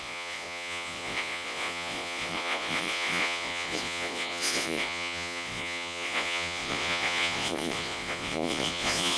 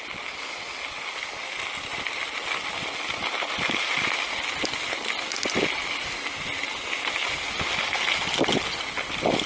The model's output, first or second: first